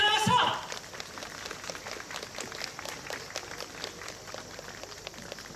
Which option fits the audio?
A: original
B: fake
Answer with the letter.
A